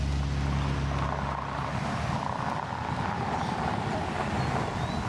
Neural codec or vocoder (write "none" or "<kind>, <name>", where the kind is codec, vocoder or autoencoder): none